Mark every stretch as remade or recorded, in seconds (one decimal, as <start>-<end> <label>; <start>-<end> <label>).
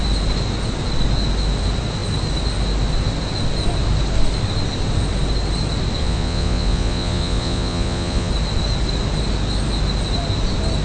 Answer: 0.0-6.0 recorded; 6.0-8.3 remade; 8.3-10.8 recorded